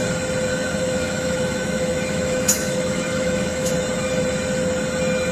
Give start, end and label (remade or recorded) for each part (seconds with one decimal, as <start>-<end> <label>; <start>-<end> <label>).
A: 0.0-0.5 recorded; 0.5-3.7 remade; 3.7-5.3 recorded